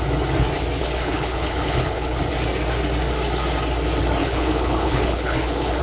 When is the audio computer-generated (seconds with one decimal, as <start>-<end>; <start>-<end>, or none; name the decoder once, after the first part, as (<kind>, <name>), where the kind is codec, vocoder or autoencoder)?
0.8-2.2 (codec, HILCodec); 4.2-5.8